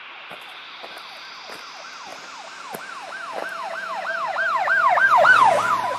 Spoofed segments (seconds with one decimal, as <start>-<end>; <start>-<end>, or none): none